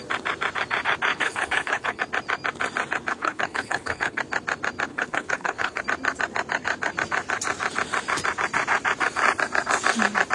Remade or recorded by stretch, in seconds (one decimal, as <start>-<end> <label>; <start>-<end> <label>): 0.0-1.1 recorded; 1.1-2.0 remade; 2.0-3.1 recorded; 3.1-4.2 remade; 4.2-4.9 recorded; 4.9-5.8 remade; 5.8-10.3 recorded